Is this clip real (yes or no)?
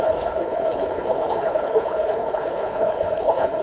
no